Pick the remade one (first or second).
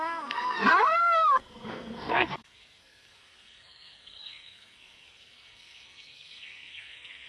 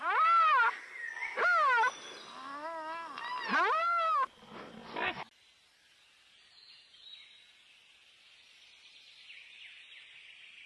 first